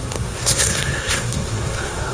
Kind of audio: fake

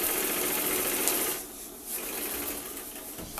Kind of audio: real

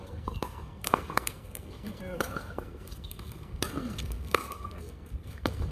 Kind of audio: fake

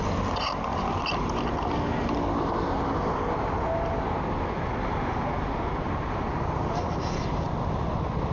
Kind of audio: real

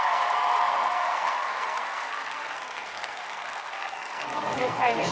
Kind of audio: fake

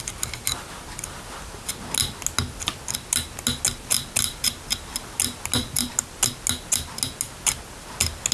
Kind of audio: real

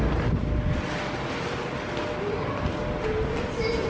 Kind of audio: real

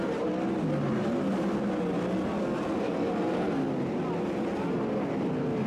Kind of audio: real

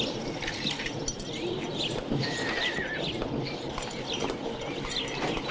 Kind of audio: real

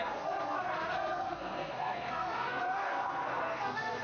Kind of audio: fake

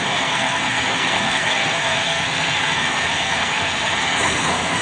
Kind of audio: fake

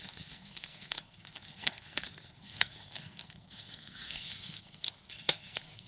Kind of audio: fake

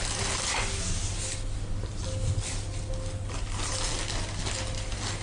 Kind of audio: real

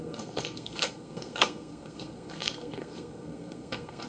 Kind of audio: fake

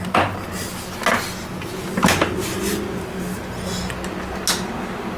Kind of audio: real